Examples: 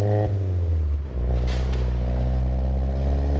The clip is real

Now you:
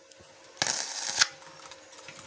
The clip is real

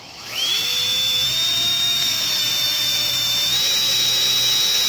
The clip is fake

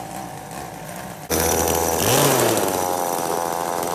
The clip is real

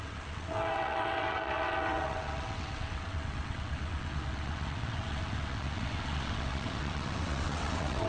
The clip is fake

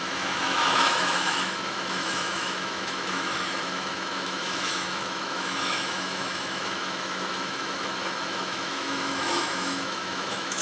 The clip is fake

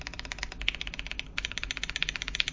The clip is real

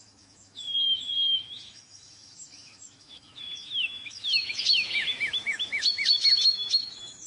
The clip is fake